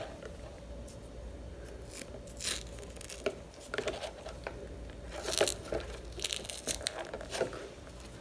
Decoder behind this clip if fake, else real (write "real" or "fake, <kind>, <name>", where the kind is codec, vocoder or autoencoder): real